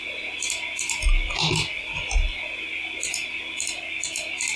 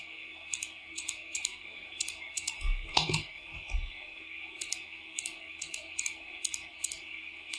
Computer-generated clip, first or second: second